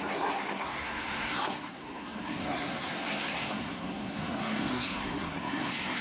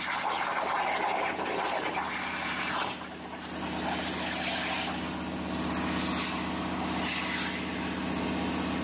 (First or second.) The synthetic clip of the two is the first